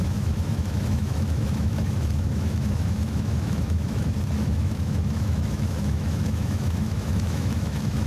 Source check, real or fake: fake